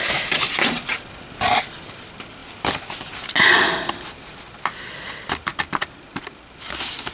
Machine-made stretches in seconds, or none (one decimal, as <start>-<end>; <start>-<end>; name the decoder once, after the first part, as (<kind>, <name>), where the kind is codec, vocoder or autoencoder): none